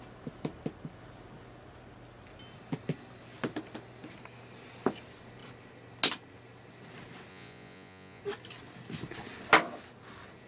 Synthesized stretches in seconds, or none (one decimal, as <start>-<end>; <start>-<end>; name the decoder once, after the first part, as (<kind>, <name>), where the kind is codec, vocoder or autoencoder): 7.3-8.2 (vocoder, Vocos)